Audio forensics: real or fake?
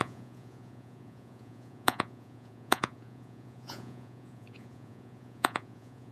fake